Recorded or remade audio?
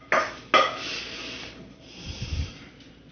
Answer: recorded